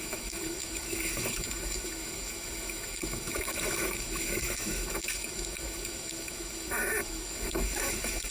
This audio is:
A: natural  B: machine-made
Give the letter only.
B